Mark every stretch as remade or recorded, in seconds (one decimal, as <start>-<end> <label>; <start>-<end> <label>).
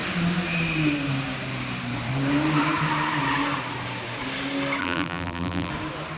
0.0-4.8 recorded; 4.8-5.7 remade; 5.7-6.2 recorded